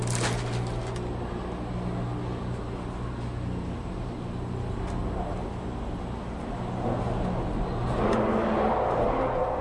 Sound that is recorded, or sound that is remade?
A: recorded